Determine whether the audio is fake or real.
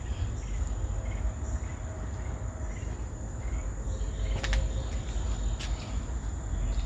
real